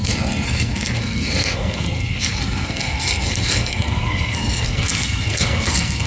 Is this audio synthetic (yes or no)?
yes